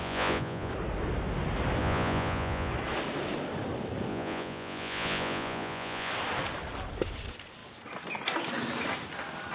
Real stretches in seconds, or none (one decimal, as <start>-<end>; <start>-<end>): 0.7-1.8; 2.7-4.1; 6.1-9.5